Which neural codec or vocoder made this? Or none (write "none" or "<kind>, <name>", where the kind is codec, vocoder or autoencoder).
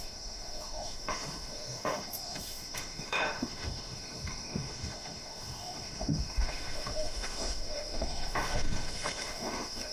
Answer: autoencoder, DAC-VAE